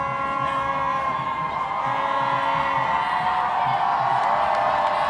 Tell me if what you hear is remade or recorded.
recorded